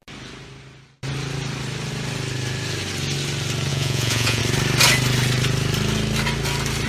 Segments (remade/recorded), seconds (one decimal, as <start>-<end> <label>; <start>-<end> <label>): 0.0-3.7 recorded; 3.7-4.4 remade; 4.4-6.9 recorded

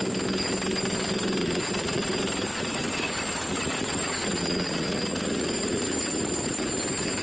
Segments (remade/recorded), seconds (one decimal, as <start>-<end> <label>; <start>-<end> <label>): 0.0-1.4 recorded; 1.4-2.1 remade; 2.1-2.5 recorded; 2.5-6.8 remade; 6.8-7.2 recorded

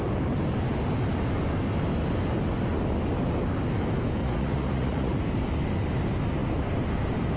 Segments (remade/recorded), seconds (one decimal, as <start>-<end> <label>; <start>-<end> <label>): 0.0-4.2 recorded; 4.2-5.2 remade; 5.2-7.4 recorded

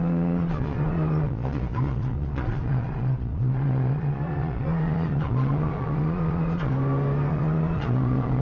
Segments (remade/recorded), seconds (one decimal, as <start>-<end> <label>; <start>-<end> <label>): 0.0-6.7 remade; 6.7-7.3 recorded; 7.3-8.4 remade

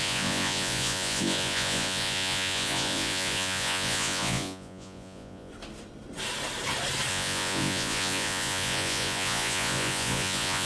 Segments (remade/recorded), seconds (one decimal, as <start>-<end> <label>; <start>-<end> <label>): 0.0-5.5 remade; 5.5-7.1 recorded; 7.1-10.7 remade

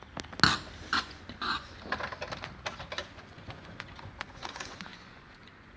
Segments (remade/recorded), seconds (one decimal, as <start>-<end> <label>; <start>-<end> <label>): 0.0-0.9 recorded; 0.9-1.8 remade; 1.8-3.0 recorded; 3.0-5.8 remade